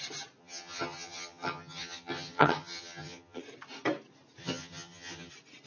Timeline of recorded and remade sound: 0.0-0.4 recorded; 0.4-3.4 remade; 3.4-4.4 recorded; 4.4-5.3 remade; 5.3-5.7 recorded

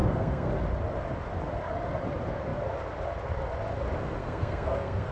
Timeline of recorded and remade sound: 0.0-0.5 remade; 0.5-4.2 recorded; 4.2-5.1 remade

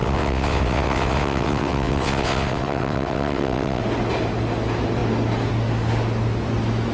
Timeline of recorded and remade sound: 0.0-3.8 remade; 3.8-6.9 recorded

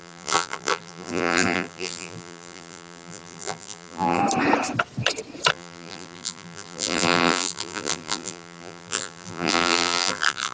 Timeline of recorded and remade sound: 0.0-4.2 remade; 4.2-5.5 recorded; 5.5-10.5 remade

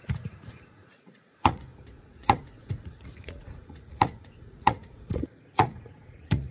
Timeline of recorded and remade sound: 0.0-6.5 remade

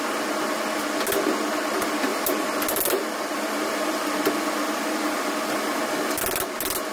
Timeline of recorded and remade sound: 0.0-2.1 recorded; 2.1-6.2 remade; 6.2-6.9 recorded